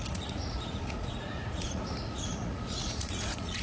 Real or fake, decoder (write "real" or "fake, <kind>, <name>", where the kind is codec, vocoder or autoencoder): fake, vocoder, Vocos